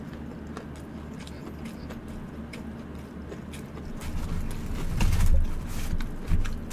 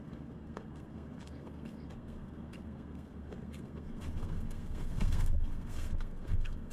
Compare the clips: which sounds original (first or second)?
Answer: first